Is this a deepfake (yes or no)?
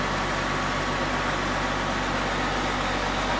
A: no